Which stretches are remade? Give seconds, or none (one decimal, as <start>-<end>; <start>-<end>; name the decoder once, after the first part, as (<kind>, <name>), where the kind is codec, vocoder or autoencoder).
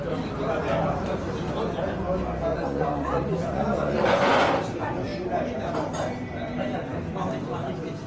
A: 2.5-4.5 (vocoder, Vocos)